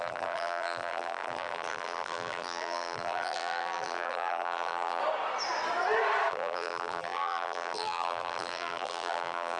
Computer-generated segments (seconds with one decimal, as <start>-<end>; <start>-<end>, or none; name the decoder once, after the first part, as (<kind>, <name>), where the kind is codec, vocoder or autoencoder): 0.0-5.0 (vocoder, BigVGAN v2); 6.3-9.6

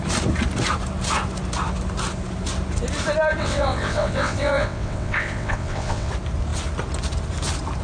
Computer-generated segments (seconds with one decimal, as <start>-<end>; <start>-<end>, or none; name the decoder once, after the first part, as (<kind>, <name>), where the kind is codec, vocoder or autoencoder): 3.4-6.1 (vocoder, WaveNeXt)

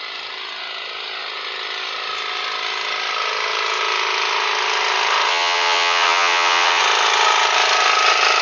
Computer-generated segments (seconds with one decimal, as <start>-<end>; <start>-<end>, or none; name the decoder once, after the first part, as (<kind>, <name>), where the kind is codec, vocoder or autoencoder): 5.3-6.8 (vocoder, HiFi-GAN)

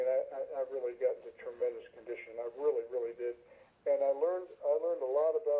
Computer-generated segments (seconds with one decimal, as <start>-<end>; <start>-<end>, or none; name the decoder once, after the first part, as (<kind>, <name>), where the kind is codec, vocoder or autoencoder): none